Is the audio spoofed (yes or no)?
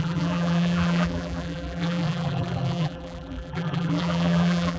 yes